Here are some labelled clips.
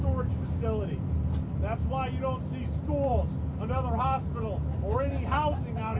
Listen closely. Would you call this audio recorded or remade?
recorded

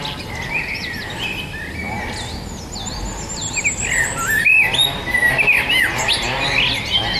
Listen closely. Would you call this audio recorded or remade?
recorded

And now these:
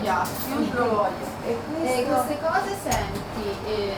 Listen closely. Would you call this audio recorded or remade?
recorded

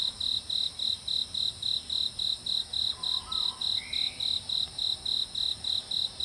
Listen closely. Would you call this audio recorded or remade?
recorded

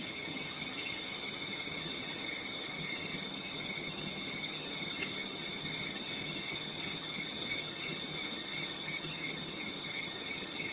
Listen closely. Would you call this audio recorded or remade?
remade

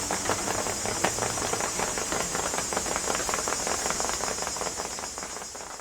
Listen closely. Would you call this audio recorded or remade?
recorded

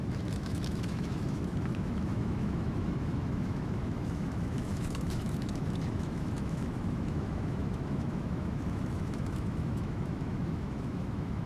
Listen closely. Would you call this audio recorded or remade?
remade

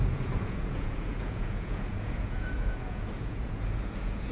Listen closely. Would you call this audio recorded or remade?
remade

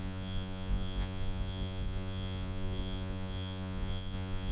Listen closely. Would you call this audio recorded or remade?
remade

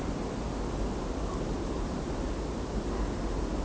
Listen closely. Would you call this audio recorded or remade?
recorded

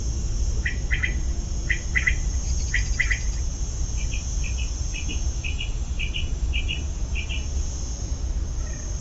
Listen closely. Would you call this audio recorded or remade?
recorded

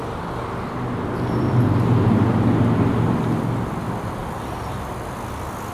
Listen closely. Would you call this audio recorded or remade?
recorded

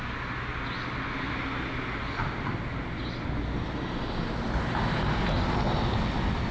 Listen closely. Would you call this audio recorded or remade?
recorded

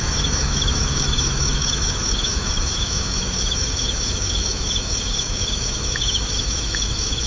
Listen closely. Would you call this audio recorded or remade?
remade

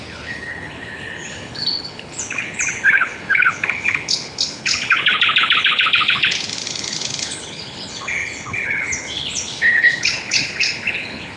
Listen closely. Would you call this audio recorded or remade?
remade